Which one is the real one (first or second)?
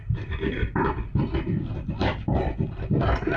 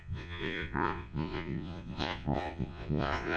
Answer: first